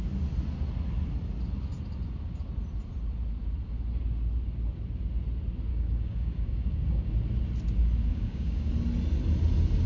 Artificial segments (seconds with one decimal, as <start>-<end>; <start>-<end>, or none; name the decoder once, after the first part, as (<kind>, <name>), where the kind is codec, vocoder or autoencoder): 5.7-7.1 (codec, DAC); 8.1-8.7